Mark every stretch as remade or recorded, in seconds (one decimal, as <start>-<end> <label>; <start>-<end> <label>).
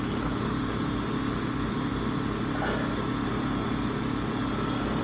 0.0-5.0 recorded